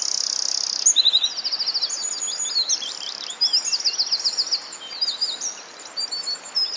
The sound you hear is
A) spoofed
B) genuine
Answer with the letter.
B